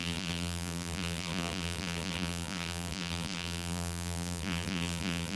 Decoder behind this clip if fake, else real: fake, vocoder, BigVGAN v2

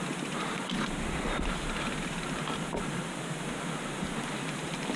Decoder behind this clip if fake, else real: fake, vocoder, BigVGAN v2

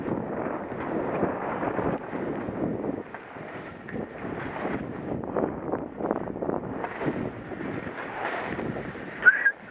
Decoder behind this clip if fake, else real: real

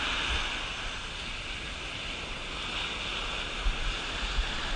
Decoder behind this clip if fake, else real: real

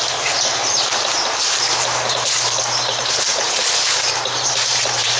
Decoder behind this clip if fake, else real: fake, vocoder, BigVGAN v2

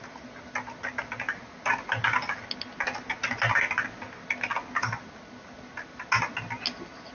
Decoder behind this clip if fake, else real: real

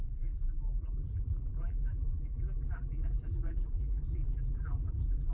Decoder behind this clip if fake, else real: fake, vocoder, BigVGAN v2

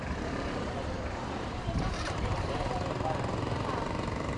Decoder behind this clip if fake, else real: fake, vocoder, BigVGAN v2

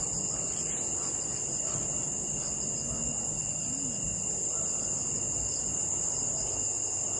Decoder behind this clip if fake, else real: real